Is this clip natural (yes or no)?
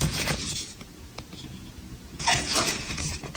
no